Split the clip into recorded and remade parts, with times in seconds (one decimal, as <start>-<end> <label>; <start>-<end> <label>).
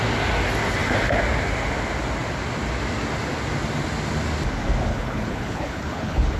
0.0-4.9 recorded; 4.9-6.4 remade